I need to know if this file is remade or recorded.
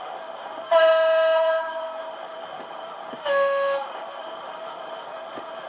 remade